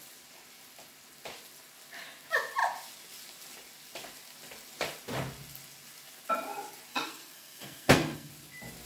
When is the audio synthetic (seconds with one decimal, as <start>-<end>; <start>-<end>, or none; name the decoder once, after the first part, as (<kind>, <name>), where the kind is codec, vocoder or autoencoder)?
6.9-8.3 (codec, SNAC)